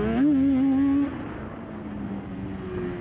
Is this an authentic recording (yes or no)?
yes